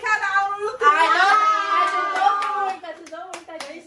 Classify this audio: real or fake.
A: fake